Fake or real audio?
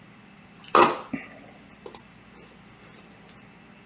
real